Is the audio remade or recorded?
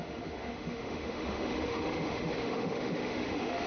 remade